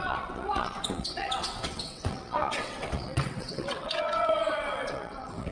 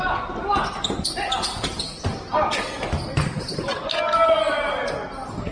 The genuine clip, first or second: second